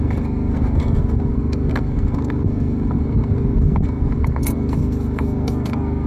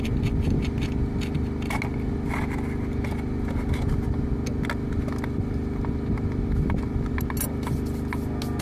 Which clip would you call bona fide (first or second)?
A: second